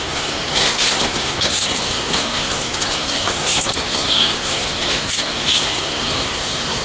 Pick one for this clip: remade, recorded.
remade